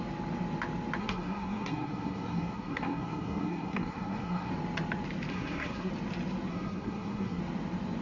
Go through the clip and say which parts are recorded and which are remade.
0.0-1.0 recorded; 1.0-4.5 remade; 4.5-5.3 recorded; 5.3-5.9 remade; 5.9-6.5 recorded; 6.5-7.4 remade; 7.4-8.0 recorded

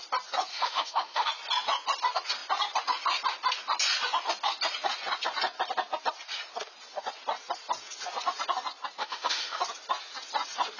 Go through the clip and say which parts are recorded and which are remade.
0.0-0.5 recorded; 0.5-1.3 remade; 1.3-9.0 recorded; 9.0-9.6 remade; 9.6-10.8 recorded

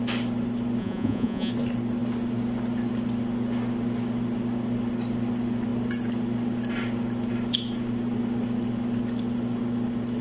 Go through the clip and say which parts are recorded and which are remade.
0.0-0.8 recorded; 0.8-1.5 remade; 1.5-10.2 recorded

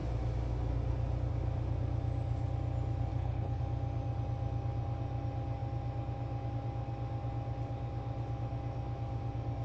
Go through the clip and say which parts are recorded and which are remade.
0.0-3.1 recorded; 3.1-3.6 remade; 3.6-9.6 recorded

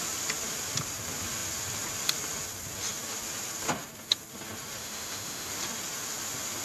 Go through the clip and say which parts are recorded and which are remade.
0.0-4.8 recorded; 4.8-5.5 remade; 5.5-6.6 recorded

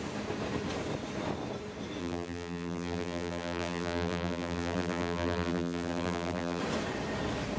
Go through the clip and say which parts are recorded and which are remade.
0.0-2.0 recorded; 2.0-6.6 remade; 6.6-7.6 recorded

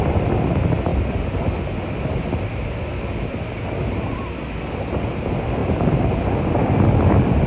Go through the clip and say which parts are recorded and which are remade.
0.0-7.5 recorded

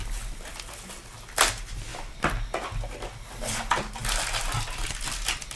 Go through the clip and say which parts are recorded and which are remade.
0.0-5.5 recorded